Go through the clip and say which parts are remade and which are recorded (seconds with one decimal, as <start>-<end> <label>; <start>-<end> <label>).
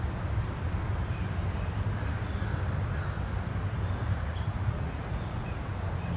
0.0-4.0 recorded; 4.0-5.7 remade; 5.7-6.2 recorded